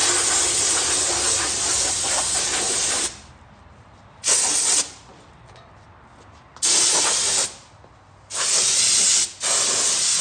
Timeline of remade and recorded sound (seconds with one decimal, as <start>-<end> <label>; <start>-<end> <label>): 0.0-10.2 recorded